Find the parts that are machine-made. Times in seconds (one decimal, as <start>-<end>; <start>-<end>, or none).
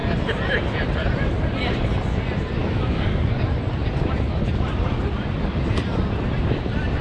2.6-3.3